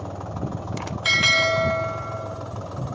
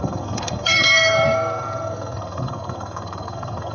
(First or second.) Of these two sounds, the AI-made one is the second